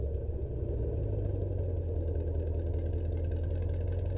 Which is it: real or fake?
real